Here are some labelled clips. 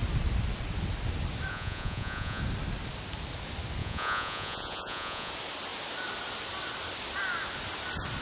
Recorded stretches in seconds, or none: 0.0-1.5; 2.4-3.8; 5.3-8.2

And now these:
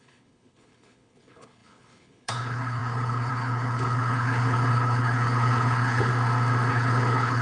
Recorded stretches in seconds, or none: 6.1-6.7

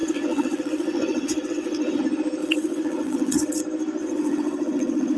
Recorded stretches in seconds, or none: 2.0-2.4; 3.6-4.0

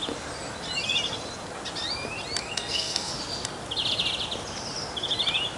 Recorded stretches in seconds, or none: 0.0-2.4; 3.1-5.6

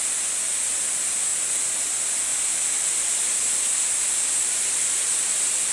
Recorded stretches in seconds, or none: 0.0-1.3; 1.8-2.3

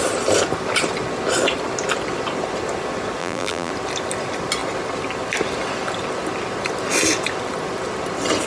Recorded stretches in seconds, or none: 0.0-3.2; 3.7-8.5